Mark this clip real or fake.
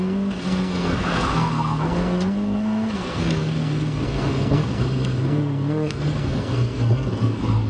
fake